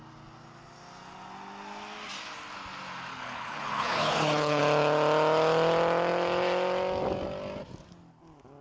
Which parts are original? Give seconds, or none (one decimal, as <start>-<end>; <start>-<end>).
0.0-3.1; 4.6-8.6